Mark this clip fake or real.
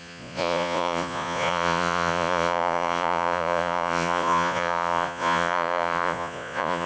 fake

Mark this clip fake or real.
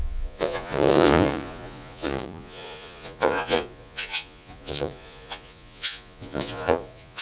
fake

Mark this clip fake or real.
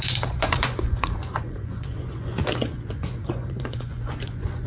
fake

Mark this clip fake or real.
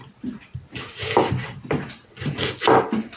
real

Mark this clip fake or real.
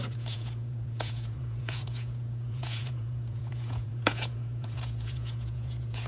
fake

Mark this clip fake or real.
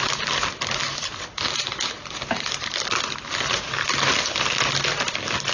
real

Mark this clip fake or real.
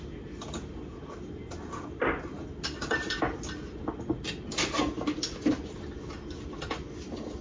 real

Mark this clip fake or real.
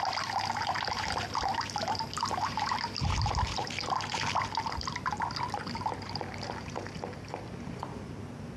real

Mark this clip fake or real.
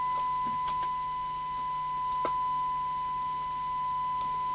real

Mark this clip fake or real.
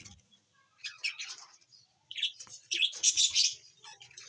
fake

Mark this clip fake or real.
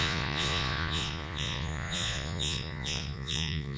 fake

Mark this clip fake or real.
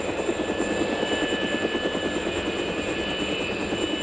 real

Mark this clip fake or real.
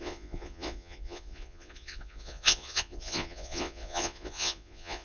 fake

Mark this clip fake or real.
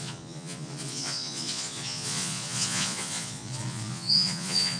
fake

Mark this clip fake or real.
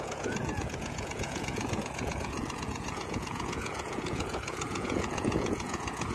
fake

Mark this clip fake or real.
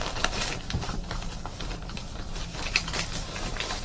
real